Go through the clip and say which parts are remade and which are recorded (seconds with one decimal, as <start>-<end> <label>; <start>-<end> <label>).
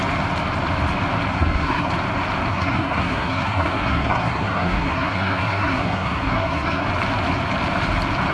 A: 0.0-1.3 recorded; 1.3-1.9 remade; 1.9-2.5 recorded; 2.5-6.9 remade; 6.9-8.3 recorded